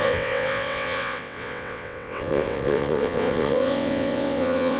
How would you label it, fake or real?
fake